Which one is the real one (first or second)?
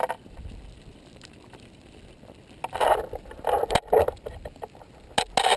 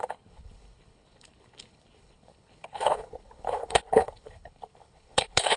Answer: first